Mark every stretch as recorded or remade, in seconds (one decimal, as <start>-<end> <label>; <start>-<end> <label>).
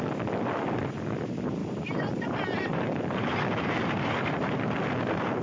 0.0-1.6 recorded; 1.6-4.8 remade; 4.8-5.4 recorded